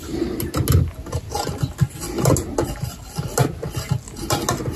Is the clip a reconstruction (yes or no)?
no